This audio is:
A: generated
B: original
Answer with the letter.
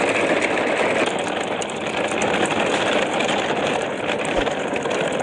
B